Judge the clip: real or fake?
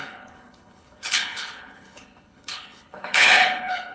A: fake